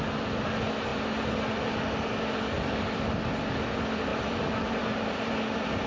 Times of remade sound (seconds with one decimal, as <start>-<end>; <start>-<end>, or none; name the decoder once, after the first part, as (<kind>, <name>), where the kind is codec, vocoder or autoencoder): 4.1-5.3 (vocoder, BigVGAN v2)